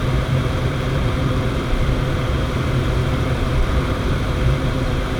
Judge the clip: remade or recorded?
remade